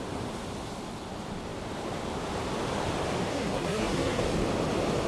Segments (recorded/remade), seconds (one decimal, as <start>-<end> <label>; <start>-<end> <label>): 0.0-3.3 recorded; 3.3-4.2 remade; 4.2-5.1 recorded